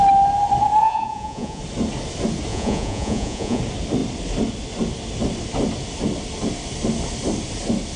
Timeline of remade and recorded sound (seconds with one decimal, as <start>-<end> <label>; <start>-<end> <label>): 0.0-0.8 recorded; 0.8-1.6 remade; 1.6-2.5 recorded; 2.5-3.6 remade; 3.6-8.0 recorded